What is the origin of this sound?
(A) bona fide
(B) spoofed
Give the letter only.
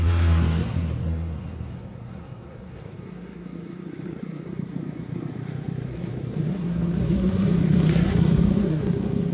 B